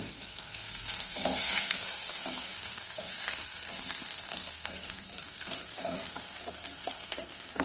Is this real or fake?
fake